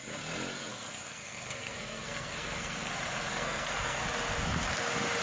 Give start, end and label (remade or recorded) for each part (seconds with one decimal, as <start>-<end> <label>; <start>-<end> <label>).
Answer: 0.0-0.7 recorded; 0.7-2.9 remade; 2.9-3.3 recorded; 3.3-4.0 remade; 4.0-5.2 recorded